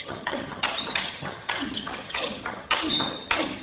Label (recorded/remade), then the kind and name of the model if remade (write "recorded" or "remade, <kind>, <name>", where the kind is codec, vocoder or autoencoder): remade, vocoder, HiFi-GAN